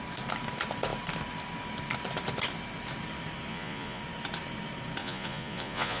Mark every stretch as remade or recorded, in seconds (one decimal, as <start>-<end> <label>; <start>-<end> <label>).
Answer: 0.0-3.5 recorded; 3.5-4.0 remade; 4.0-5.0 recorded; 5.0-6.0 remade